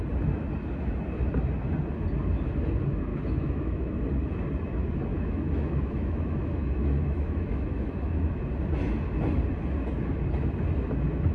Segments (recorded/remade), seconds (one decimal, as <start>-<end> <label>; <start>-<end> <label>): 0.0-3.1 recorded; 3.1-4.0 remade; 4.0-5.1 recorded; 5.1-8.4 remade; 8.4-11.3 recorded